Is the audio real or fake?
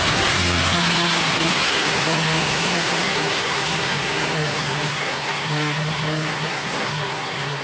fake